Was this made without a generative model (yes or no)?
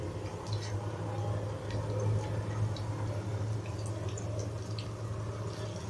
yes